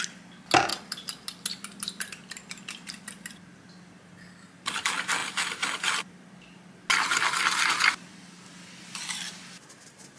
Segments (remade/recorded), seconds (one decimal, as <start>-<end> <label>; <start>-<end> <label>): 0.0-10.2 recorded